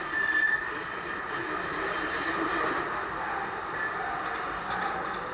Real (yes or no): yes